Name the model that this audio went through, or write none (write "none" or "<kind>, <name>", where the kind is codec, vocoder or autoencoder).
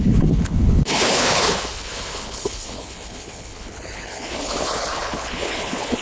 codec, HILCodec